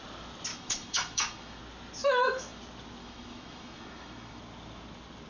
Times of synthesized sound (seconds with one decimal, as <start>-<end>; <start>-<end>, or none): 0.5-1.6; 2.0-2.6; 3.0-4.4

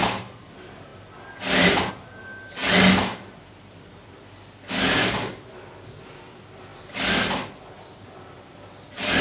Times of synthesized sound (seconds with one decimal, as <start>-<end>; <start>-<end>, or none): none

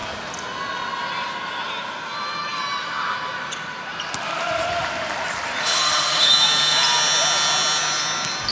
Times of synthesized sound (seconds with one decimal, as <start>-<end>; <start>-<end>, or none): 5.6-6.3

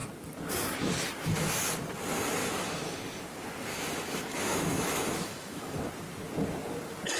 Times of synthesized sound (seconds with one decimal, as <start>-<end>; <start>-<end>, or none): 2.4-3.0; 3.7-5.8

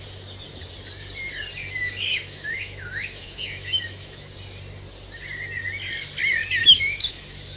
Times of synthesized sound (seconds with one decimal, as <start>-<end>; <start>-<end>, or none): 1.6-4.3; 6.6-7.6

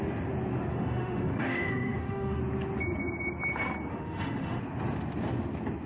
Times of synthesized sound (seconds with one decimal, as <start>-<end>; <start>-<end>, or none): 0.7-2.4; 3.9-4.6